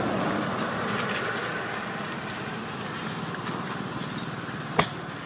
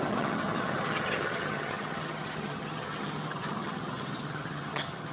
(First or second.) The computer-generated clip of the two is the second